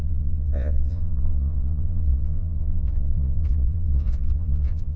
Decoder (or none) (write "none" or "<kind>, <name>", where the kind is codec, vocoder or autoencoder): vocoder, Vocos